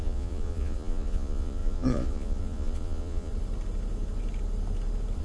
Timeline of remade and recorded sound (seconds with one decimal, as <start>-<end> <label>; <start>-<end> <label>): 0.0-3.3 remade; 3.3-5.2 recorded